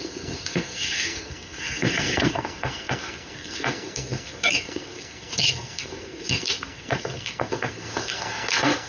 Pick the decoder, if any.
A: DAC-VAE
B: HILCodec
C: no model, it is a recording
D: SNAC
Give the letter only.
D